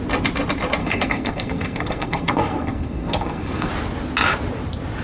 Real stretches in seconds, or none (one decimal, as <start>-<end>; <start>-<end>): 0.0-0.8; 3.7-5.0